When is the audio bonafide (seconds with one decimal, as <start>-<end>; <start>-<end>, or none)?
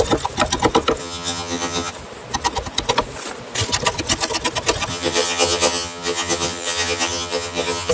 0.0-1.0; 1.9-4.9